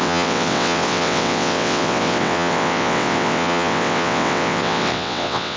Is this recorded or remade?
remade